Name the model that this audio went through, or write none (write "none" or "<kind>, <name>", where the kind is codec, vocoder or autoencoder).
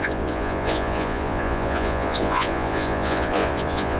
vocoder, Vocos